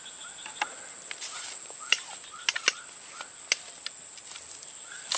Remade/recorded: recorded